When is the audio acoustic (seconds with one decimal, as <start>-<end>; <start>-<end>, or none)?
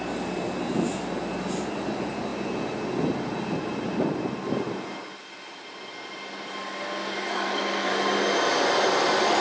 0.0-7.3; 7.9-9.4